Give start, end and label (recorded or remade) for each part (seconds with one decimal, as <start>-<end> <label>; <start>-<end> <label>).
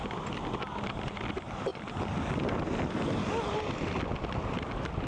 0.0-5.1 recorded